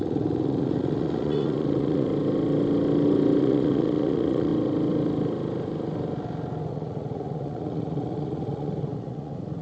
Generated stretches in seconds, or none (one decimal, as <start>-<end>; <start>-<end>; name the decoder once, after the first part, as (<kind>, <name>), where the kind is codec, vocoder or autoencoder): 0.0-2.1 (vocoder, Vocos); 3.4-4.5; 6.7-9.6